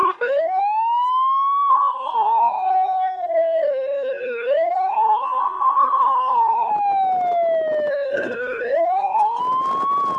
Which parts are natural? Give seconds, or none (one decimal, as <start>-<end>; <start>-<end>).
0.6-1.7; 6.7-7.9; 9.4-10.2